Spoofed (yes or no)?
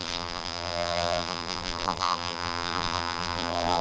yes